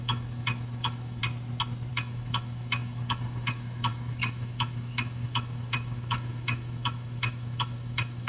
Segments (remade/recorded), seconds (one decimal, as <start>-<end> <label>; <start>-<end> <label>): 0.0-1.2 remade; 1.2-1.9 recorded; 1.9-8.3 remade